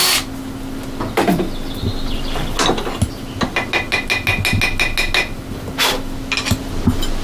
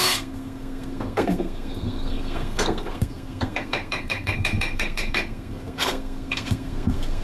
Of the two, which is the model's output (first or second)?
second